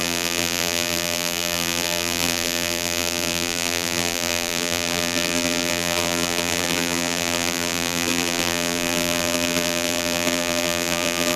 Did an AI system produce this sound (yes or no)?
yes